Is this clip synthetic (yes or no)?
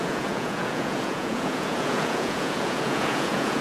yes